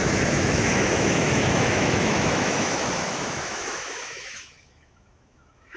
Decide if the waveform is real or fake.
fake